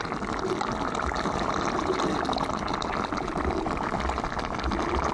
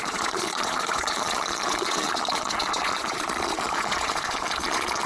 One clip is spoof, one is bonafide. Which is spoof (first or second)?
second